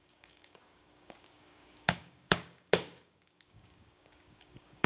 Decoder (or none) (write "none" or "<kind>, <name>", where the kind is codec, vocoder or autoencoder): codec, DAC